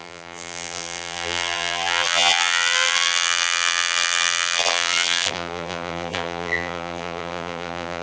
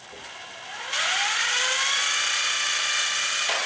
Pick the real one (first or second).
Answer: second